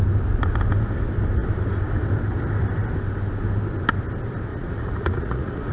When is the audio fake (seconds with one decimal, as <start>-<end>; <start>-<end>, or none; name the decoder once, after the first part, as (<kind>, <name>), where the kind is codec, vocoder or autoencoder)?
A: 4.5-5.7 (vocoder, Vocos)